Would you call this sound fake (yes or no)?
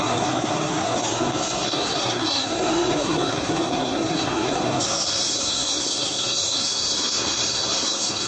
yes